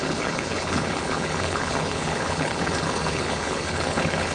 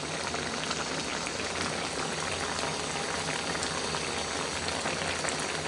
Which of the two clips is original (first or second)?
second